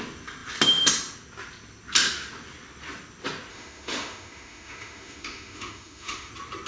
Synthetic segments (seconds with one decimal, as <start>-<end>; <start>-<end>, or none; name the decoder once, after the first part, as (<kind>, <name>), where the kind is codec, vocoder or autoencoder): 3.5-6.3 (autoencoder, DAC-VAE)